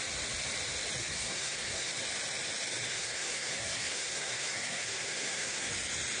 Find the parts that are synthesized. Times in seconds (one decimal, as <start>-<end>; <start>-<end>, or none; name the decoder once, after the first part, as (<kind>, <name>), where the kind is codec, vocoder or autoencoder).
1.0-1.9 (codec, SNAC); 2.9-5.7